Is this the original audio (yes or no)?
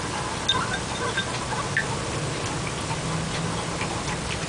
yes